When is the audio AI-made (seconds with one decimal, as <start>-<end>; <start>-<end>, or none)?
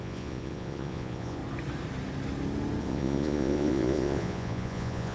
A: 0.0-1.4; 2.8-5.1